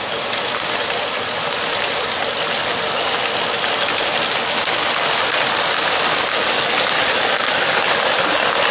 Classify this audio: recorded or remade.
recorded